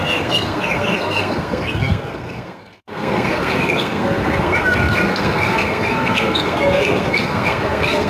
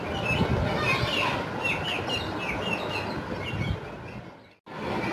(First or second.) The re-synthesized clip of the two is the first